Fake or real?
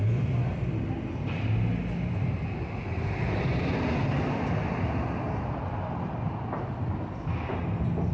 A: real